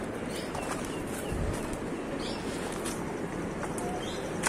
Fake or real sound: real